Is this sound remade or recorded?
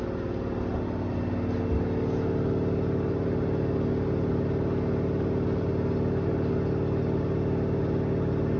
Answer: recorded